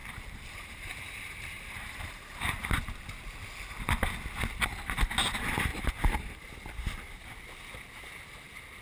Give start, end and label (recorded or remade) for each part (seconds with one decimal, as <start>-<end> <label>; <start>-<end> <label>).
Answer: 0.0-2.5 remade; 2.5-5.7 recorded; 5.7-6.4 remade; 6.4-8.8 recorded